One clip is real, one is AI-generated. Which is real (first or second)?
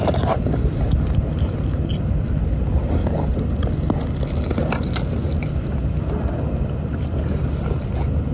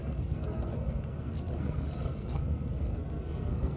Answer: first